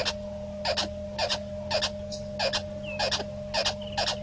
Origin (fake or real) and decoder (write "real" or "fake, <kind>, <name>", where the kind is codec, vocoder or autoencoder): real